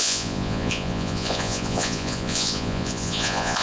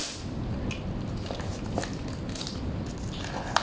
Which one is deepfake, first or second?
first